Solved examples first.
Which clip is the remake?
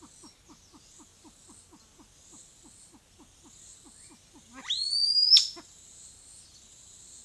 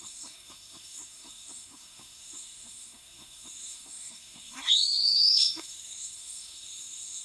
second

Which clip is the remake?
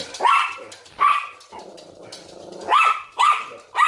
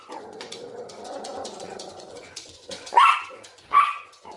second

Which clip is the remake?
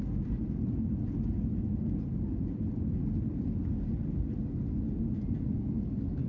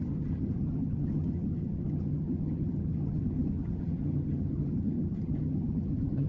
second